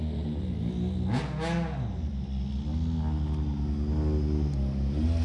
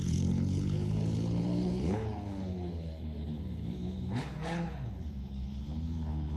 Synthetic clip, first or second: second